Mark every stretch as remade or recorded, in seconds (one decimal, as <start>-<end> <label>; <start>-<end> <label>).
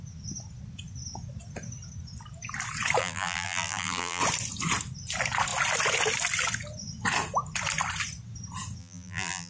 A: 0.0-3.0 recorded; 3.0-4.2 remade; 4.2-8.8 recorded; 8.8-9.5 remade